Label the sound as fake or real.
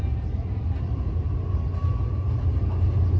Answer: real